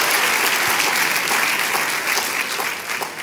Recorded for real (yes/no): yes